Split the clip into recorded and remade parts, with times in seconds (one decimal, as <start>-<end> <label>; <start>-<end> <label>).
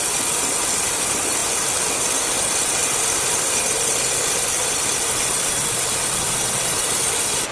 0.0-7.5 recorded